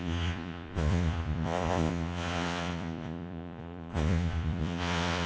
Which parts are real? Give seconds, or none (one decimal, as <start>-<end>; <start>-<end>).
none